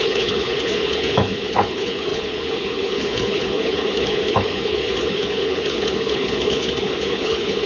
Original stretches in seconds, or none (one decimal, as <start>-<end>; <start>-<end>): none